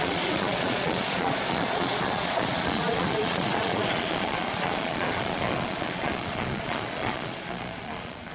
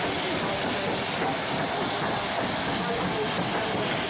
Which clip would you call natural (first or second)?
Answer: second